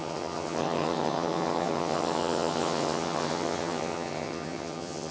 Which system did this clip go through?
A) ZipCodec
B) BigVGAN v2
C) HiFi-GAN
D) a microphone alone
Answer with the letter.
C